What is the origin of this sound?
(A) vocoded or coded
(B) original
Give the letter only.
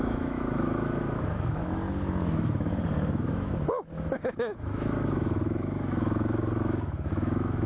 A